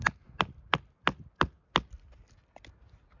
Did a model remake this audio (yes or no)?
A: no